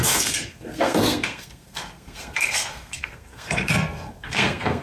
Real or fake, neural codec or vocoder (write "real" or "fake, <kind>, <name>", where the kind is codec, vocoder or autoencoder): fake, codec, SNAC